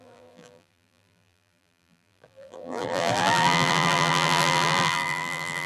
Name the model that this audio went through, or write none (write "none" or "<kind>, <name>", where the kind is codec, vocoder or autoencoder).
vocoder, BigVGAN v2